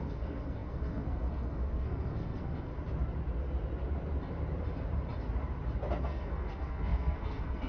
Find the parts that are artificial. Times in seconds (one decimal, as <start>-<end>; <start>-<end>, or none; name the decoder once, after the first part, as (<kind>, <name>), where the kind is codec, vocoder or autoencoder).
0.0-2.7 (codec, SNAC); 6.0-7.7